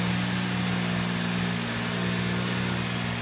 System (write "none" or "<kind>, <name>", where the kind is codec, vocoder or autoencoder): none